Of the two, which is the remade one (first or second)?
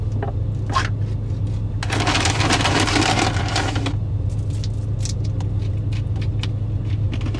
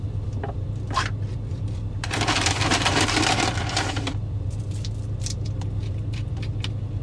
second